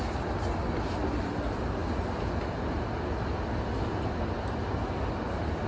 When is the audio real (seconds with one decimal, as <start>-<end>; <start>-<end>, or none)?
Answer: 0.0-5.7